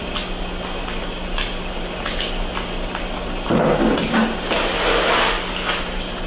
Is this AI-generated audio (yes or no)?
no